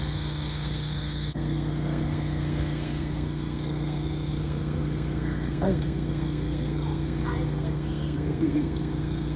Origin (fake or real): fake